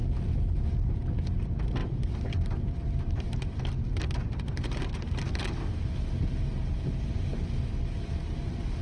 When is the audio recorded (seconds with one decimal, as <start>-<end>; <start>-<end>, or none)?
0.7-1.8; 3.6-8.8